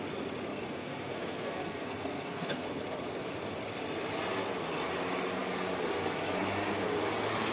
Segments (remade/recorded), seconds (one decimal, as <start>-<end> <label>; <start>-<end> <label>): 0.0-0.5 recorded; 0.5-2.8 remade; 2.8-7.5 recorded